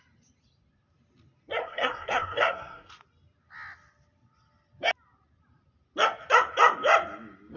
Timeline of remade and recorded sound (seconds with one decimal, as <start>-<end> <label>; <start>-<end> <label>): 0.0-1.6 recorded; 1.6-2.9 remade; 2.9-7.6 recorded